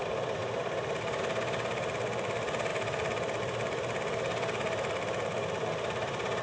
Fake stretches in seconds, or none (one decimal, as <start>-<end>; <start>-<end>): none